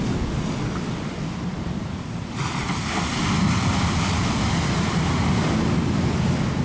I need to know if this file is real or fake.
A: real